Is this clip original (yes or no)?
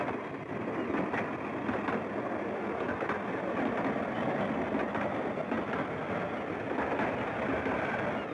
yes